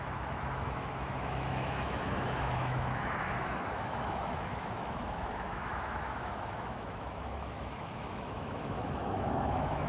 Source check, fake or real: fake